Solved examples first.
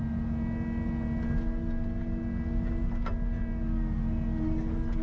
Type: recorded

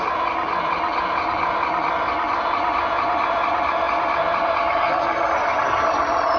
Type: recorded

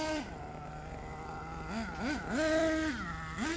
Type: recorded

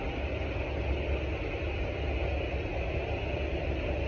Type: recorded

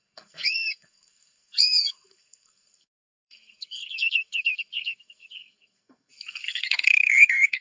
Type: remade